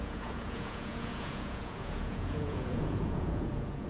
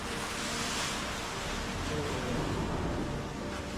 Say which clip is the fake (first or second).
first